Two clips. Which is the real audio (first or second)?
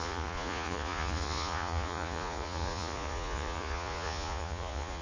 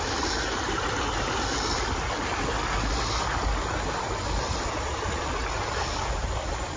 second